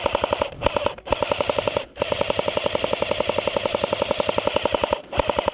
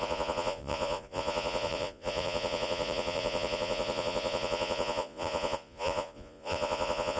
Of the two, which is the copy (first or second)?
second